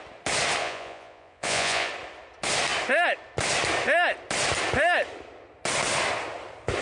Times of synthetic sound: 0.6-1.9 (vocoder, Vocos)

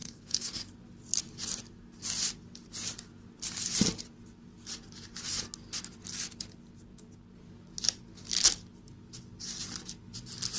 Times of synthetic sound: 0.0-0.7 (codec, SNAC)

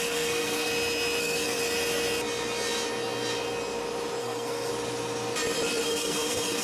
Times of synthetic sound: 0.0-0.7 (codec, SNAC); 1.2-1.6; 4.2-4.7; 5.8-6.6

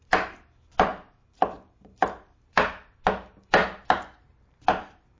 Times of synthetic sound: 0.0-3.6 (vocoder, BigVGAN v2); 4.5-5.2

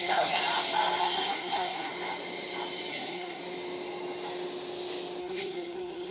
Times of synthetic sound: 0.0-0.4 (codec, SNAC); 1.0-1.9; 2.9-3.4; 5.2-6.1